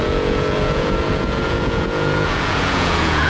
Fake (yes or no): yes